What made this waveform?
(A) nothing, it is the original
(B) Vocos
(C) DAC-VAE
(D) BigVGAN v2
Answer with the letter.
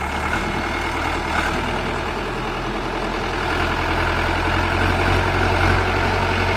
A